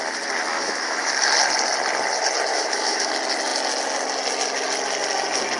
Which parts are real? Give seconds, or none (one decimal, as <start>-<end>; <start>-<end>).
0.0-0.5; 1.1-2.5; 3.1-5.6